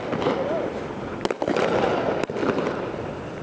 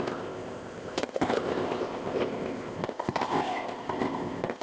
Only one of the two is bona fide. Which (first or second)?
first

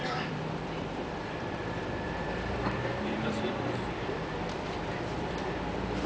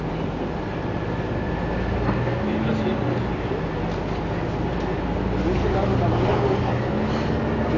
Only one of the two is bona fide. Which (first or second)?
second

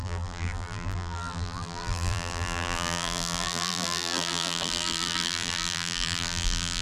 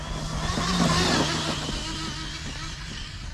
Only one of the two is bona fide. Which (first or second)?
second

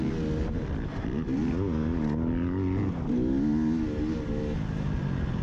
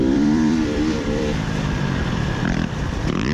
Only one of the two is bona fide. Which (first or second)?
first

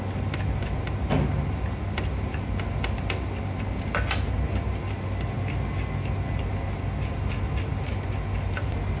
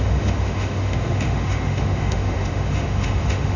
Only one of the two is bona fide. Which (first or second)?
first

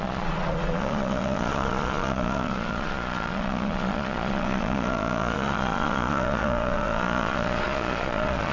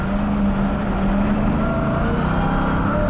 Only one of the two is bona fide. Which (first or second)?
second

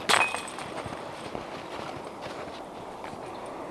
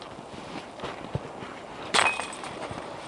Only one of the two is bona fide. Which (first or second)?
first